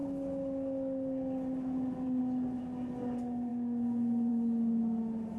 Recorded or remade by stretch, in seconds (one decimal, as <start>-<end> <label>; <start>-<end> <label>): 0.0-5.4 recorded

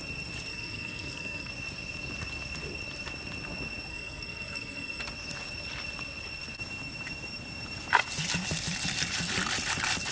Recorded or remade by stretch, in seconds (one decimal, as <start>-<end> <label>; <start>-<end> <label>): 0.0-0.5 recorded; 0.5-1.5 remade; 1.5-3.9 recorded; 3.9-5.0 remade; 5.0-10.1 recorded

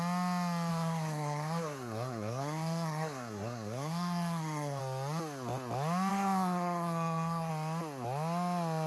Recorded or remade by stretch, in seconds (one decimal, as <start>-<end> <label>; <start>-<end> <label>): 0.0-0.7 recorded; 0.7-4.8 remade; 4.8-6.1 recorded; 6.1-7.5 remade; 7.5-8.9 recorded

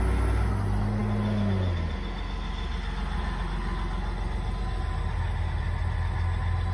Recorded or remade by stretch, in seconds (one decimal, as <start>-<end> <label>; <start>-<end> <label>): 0.0-6.7 recorded

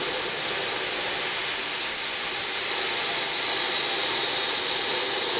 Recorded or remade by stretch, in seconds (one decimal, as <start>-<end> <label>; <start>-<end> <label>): 0.0-5.4 recorded